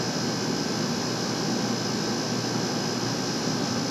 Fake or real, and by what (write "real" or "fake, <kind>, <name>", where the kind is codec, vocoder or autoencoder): real